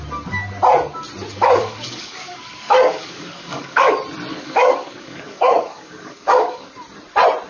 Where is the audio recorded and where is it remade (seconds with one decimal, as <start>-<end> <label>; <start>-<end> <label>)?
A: 0.0-1.3 recorded; 1.3-3.9 remade; 3.9-4.3 recorded; 4.3-6.7 remade; 6.7-7.5 recorded